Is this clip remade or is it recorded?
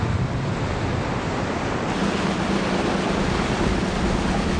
recorded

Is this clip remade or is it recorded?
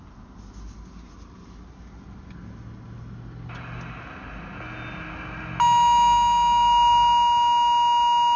recorded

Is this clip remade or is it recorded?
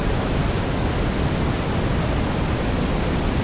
recorded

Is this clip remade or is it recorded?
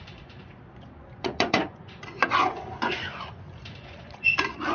remade